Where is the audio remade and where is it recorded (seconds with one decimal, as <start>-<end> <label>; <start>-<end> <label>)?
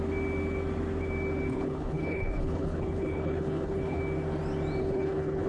0.0-1.5 recorded; 1.5-4.0 remade; 4.0-4.8 recorded; 4.8-5.5 remade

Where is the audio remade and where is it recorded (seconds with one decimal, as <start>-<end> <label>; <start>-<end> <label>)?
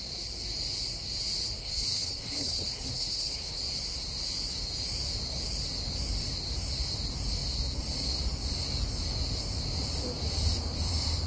0.0-1.6 recorded; 1.6-3.6 remade; 3.6-11.3 recorded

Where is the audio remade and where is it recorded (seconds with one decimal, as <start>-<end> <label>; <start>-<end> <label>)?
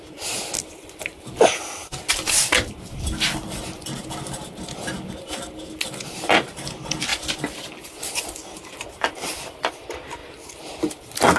0.0-11.4 recorded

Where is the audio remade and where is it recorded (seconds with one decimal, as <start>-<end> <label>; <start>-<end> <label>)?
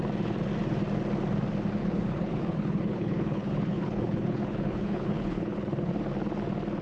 0.0-1.8 recorded; 1.8-5.9 remade; 5.9-6.8 recorded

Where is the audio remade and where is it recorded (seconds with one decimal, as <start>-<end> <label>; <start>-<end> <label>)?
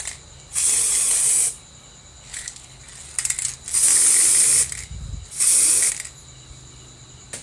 0.0-2.3 recorded; 2.3-2.8 remade; 2.8-7.4 recorded